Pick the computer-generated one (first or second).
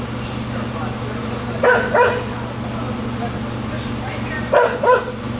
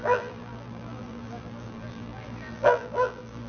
second